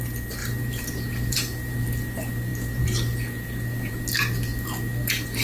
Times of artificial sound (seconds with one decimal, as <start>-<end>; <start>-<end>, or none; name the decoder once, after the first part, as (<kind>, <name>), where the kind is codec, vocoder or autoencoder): 0.4-1.8 (vocoder, BigVGAN v2)